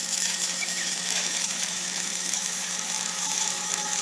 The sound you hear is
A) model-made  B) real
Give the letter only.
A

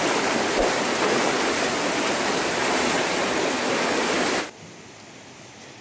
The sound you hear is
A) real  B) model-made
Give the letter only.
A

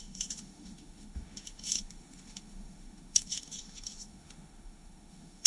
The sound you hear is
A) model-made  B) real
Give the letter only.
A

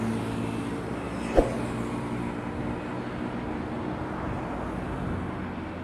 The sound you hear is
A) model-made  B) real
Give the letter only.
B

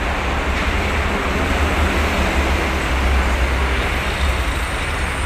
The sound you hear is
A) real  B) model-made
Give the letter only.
A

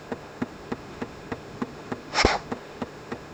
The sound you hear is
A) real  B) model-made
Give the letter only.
B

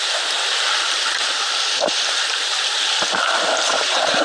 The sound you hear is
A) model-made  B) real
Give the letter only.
B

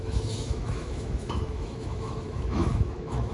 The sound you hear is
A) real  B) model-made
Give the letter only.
B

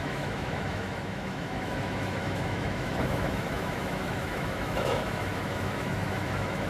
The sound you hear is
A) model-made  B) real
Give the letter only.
A